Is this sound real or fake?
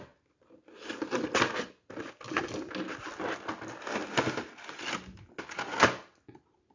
real